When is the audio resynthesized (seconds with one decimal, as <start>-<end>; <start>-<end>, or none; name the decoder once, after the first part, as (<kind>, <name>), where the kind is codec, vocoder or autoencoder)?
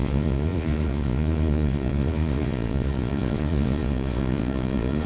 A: 0.0-5.1 (vocoder, Vocos)